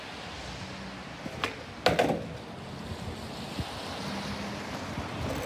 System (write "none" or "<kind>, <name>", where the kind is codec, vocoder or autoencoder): none